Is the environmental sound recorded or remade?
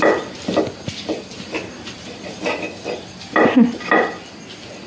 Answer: recorded